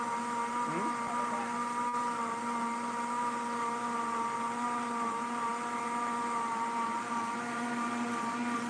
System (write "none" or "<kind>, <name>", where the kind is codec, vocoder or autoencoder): none